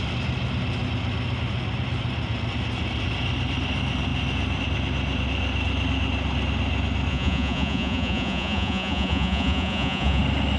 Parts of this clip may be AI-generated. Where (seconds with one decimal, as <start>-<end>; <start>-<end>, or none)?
7.1-10.2